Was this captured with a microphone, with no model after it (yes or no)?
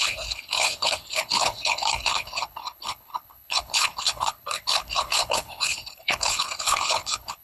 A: no